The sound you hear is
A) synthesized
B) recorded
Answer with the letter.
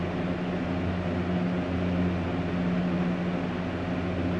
B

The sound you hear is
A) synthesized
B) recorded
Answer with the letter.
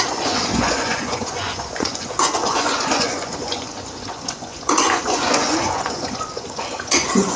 A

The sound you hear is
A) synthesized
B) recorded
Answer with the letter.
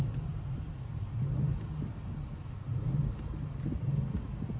B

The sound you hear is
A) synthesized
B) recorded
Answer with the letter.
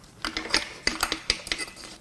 B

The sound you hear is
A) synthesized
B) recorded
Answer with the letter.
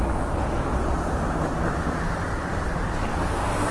A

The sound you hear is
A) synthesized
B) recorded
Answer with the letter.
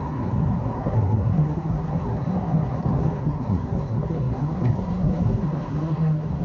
A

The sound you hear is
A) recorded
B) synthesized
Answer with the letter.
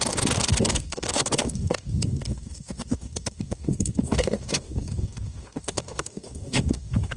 B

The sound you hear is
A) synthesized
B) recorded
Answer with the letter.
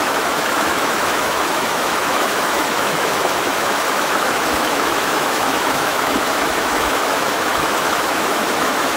A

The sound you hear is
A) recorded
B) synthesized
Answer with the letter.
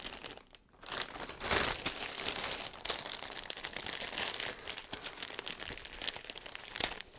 A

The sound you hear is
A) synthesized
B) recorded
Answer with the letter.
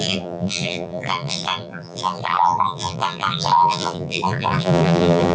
A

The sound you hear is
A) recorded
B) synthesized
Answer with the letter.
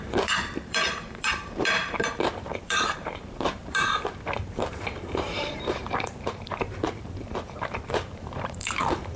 B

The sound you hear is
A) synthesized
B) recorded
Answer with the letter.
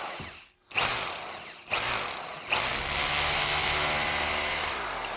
B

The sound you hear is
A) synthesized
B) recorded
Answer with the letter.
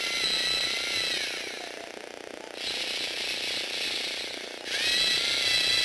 B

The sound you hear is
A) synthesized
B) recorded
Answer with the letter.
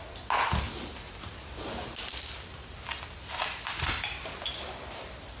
B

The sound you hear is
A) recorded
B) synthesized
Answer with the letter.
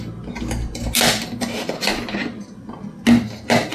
A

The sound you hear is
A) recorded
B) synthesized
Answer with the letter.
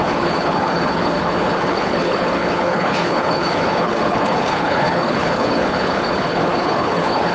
B